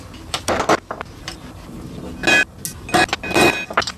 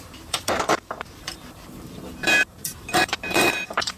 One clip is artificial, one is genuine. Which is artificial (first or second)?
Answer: second